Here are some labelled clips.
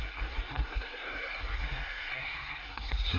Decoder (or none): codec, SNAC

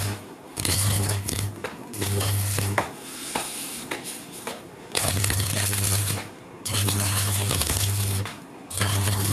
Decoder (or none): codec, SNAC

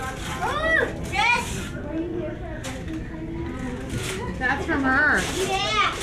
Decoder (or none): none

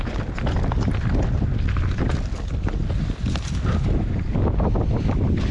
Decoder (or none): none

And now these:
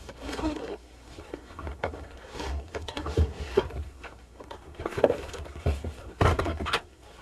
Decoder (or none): codec, SNAC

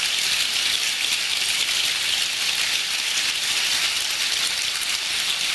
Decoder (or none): none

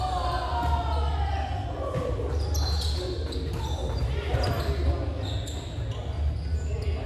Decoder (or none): none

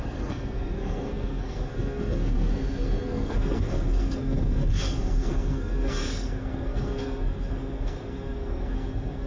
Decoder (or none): codec, SNAC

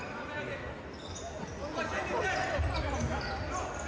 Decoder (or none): none